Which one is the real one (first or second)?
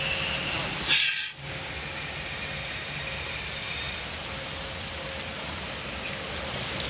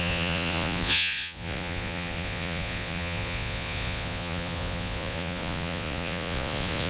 first